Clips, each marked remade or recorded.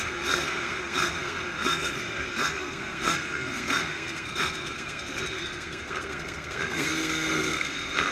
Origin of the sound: remade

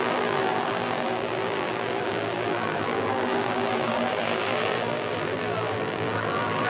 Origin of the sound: remade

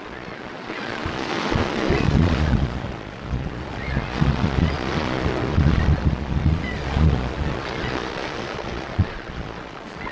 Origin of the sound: remade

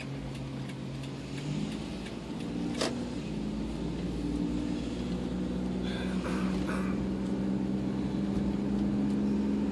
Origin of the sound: recorded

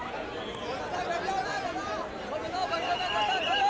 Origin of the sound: recorded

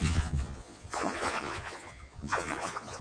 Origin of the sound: remade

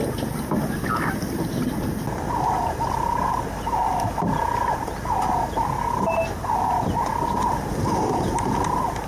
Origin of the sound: recorded